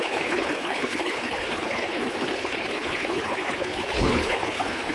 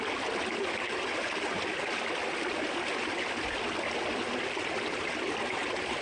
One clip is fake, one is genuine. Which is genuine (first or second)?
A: second